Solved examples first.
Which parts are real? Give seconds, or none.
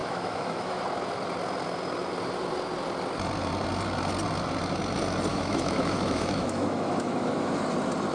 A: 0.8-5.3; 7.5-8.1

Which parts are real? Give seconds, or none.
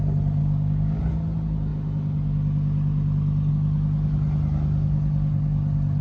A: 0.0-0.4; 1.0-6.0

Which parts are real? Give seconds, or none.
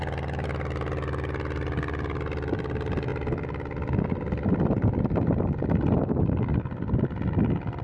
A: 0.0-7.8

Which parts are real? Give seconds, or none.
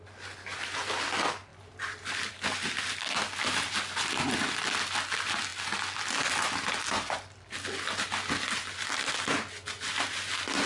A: 0.0-1.5; 2.3-10.7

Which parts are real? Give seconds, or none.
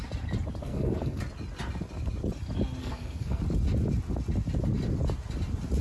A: 0.0-0.6; 1.2-2.8; 3.4-5.8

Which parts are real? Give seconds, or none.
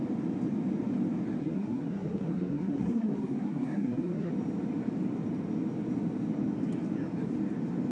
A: 0.0-1.4; 4.3-7.9